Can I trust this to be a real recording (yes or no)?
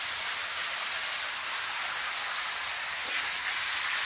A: yes